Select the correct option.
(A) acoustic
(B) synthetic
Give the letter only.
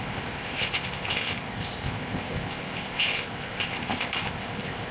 B